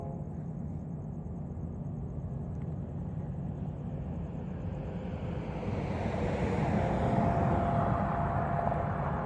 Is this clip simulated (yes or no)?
no